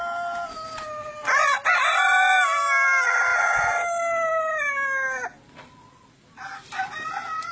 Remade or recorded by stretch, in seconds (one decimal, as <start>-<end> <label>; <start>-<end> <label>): 0.0-7.5 recorded